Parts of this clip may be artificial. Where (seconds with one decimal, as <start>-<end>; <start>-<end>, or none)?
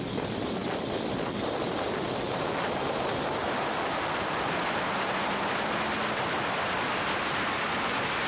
none